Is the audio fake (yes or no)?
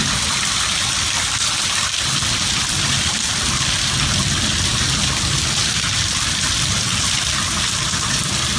no